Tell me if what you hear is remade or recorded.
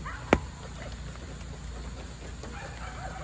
recorded